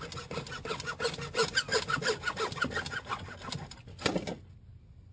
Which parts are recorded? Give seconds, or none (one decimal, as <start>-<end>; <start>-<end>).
0.0-5.1